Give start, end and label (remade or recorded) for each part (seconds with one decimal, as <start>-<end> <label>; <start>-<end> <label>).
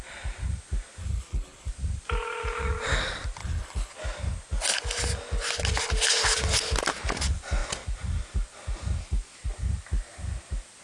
0.0-1.0 recorded; 1.0-1.7 remade; 1.7-3.4 recorded; 3.4-3.9 remade; 3.9-10.8 recorded